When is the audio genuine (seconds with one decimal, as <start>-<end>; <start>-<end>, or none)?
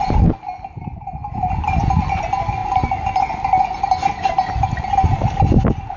0.0-2.6; 3.5-6.0